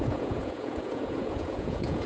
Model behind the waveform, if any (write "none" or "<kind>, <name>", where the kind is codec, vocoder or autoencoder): vocoder, Vocos